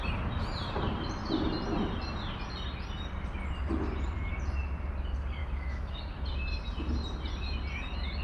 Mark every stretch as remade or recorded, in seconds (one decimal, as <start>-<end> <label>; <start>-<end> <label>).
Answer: 0.0-5.4 recorded; 5.4-6.0 remade; 6.0-8.2 recorded